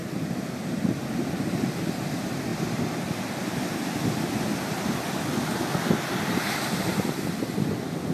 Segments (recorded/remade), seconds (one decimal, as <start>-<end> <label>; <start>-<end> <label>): 0.0-8.1 recorded